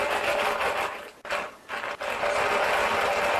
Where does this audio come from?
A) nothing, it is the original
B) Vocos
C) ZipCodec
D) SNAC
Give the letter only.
A